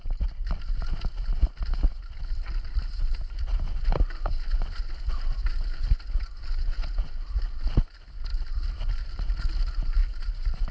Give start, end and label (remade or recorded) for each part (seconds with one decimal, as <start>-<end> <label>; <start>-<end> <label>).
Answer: 0.0-10.7 recorded